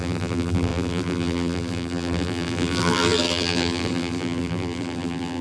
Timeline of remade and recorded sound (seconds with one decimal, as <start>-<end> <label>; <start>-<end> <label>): 0.0-5.4 remade